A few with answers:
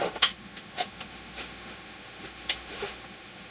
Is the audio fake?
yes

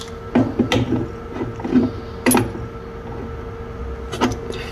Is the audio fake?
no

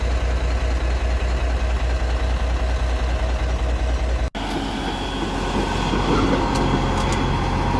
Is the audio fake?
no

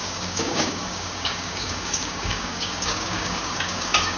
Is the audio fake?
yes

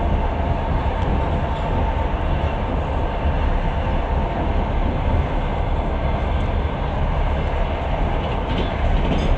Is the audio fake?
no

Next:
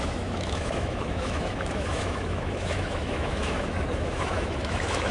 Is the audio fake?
yes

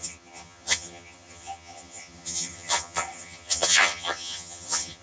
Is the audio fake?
yes